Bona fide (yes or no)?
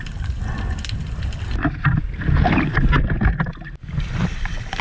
yes